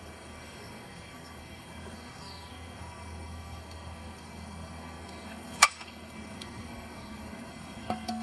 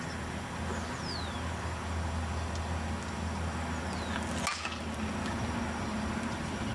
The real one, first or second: second